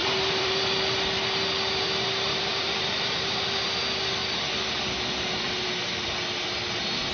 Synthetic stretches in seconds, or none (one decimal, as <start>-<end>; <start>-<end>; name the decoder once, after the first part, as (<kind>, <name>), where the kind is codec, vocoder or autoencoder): 0.0-0.6 (vocoder, BigVGAN v2); 2.3-3.3